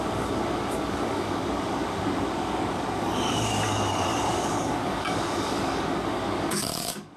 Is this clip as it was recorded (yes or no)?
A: no